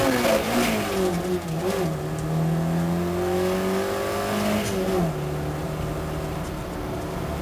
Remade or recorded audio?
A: recorded